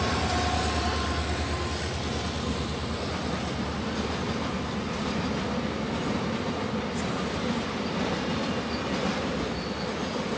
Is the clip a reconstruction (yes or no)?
no